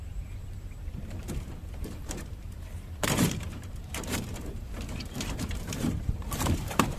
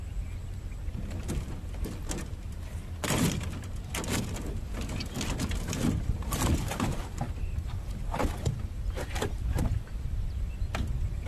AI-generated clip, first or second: first